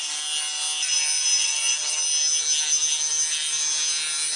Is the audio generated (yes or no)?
no